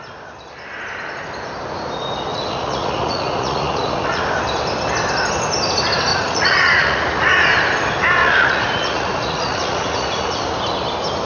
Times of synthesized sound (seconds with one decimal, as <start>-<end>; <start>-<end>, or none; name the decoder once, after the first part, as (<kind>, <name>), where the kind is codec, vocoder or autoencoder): 2.3-4.2 (vocoder, Vocos); 6.1-7.3; 8.2-10.4